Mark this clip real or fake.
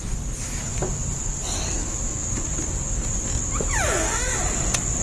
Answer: real